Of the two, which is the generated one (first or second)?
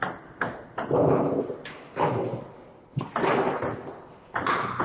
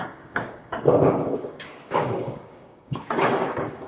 second